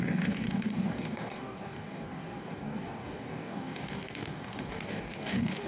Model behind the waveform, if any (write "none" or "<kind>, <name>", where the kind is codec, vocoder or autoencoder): codec, DAC